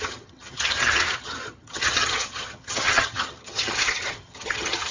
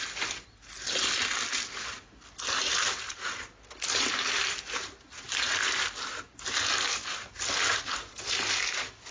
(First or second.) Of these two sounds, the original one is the second